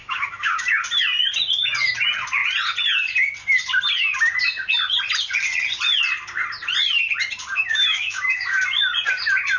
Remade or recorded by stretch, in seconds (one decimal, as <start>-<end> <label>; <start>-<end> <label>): 0.0-0.6 remade; 0.6-7.5 recorded; 7.5-8.6 remade; 8.6-9.6 recorded